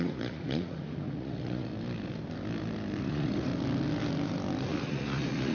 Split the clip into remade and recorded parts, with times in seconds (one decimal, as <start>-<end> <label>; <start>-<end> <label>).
0.0-1.7 remade; 1.7-3.0 recorded; 3.0-3.5 remade; 3.5-4.7 recorded; 4.7-5.5 remade

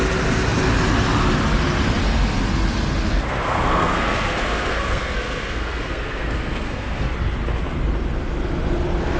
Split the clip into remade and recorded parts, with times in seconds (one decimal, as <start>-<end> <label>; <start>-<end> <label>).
0.0-3.1 recorded; 3.1-7.1 remade; 7.1-9.2 recorded

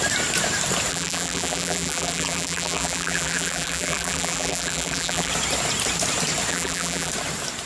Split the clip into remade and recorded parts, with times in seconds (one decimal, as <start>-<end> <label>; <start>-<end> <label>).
0.0-0.9 recorded; 0.9-5.3 remade; 5.3-6.5 recorded; 6.5-7.1 remade; 7.1-7.7 recorded

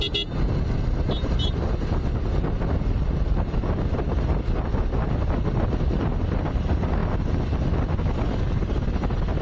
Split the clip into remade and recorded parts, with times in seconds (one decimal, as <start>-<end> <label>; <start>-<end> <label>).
0.0-9.4 recorded

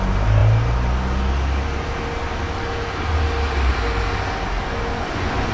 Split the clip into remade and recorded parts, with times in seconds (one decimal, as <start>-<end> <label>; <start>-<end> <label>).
0.0-4.9 recorded; 4.9-5.5 remade